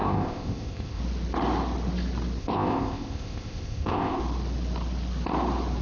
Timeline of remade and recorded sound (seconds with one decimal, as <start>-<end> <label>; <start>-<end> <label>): 0.0-1.0 remade; 1.0-2.4 recorded; 2.4-4.2 remade; 4.2-5.8 recorded